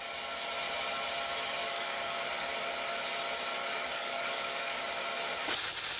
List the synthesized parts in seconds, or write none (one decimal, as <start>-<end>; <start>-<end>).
1.6-2.2; 3.6-4.8